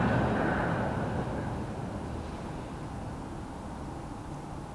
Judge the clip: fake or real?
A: real